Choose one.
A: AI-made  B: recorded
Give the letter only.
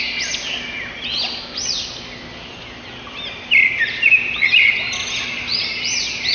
B